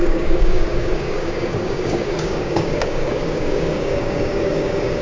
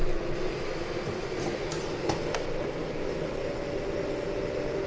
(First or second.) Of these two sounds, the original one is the second